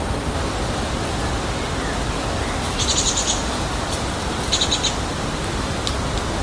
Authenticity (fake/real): real